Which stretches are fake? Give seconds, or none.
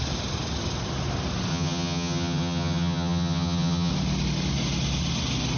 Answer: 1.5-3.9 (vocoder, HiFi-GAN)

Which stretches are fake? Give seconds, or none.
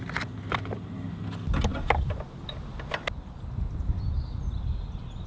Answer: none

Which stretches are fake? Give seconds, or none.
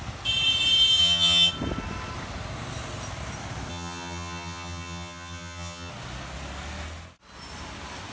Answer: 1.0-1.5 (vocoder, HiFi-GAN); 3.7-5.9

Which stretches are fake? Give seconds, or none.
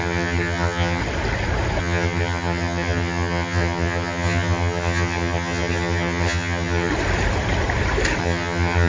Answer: 0.0-1.0 (vocoder, HiFi-GAN); 1.8-6.9; 8.2-8.9